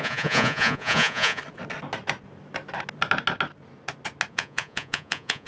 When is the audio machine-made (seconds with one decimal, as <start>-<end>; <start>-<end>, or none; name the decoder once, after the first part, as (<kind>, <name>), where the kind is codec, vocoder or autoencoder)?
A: 0.0-1.4 (vocoder, Vocos); 4.3-5.5